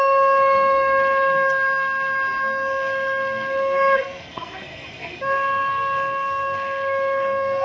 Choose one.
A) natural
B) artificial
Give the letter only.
B